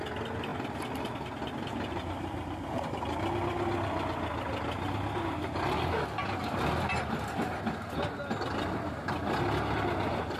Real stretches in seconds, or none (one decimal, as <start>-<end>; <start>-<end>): 0.0-10.4